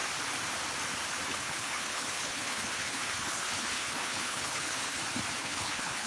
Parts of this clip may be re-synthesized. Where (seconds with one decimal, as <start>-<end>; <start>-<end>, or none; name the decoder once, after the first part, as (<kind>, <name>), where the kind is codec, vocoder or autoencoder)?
1.3-5.0 (codec, HILCodec); 5.4-6.1